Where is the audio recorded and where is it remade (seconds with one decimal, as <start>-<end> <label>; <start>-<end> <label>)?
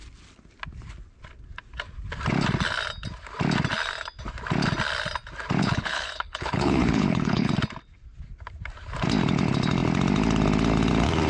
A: 0.0-5.6 recorded; 5.6-7.5 remade; 7.5-11.3 recorded